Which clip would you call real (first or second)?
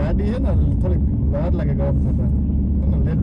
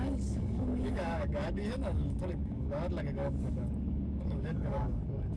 first